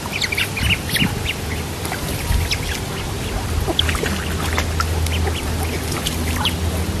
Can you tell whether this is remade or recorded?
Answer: recorded